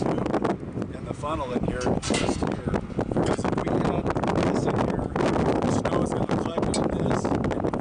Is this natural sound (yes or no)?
yes